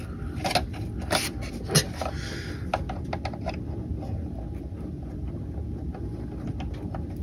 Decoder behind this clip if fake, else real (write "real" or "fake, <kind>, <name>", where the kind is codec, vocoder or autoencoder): real